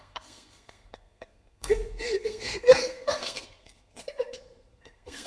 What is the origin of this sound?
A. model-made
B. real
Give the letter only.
A